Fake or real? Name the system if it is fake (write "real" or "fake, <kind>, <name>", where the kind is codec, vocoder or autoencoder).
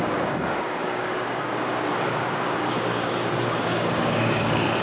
fake, codec, DAC